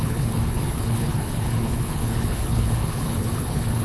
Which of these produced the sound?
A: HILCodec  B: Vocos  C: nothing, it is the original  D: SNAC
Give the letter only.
A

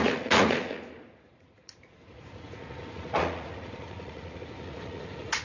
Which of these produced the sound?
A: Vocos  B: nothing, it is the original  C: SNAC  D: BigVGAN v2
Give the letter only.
A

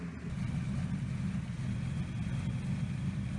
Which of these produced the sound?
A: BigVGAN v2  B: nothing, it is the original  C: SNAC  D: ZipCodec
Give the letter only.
B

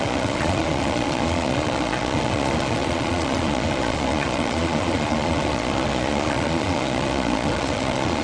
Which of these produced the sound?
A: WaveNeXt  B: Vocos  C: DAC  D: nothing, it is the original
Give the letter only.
B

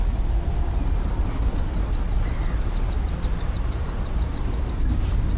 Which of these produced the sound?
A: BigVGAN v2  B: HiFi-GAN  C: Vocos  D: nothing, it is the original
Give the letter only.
D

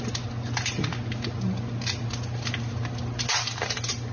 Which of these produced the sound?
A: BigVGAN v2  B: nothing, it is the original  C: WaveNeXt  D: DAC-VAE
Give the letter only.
B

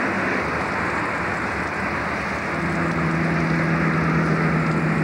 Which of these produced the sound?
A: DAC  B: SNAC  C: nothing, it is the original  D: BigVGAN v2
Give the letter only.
C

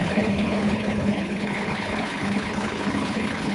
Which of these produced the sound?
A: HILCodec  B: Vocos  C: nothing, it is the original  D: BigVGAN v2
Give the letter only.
A